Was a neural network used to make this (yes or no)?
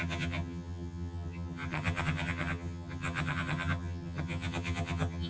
yes